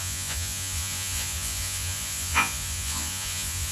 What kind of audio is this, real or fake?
fake